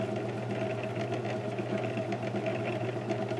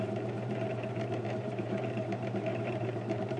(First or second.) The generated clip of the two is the second